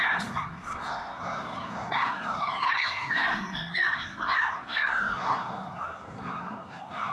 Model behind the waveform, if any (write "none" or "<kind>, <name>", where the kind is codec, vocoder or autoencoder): codec, SNAC